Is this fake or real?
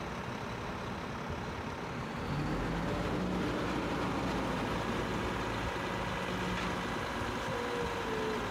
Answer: real